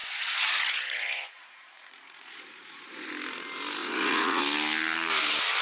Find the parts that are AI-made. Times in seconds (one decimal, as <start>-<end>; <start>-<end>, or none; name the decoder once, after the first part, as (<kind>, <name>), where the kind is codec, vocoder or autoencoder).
0.0-3.1 (vocoder, Vocos); 3.8-4.4